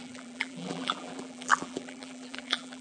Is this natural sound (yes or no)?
no